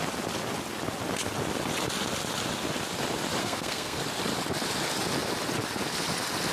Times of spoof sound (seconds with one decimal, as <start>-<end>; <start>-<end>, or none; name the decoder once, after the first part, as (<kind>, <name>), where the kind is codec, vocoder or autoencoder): 3.4-4.0 (codec, SNAC)